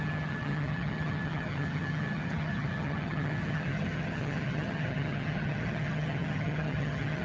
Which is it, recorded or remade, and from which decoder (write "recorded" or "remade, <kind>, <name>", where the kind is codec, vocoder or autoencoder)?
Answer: remade, vocoder, HiFi-GAN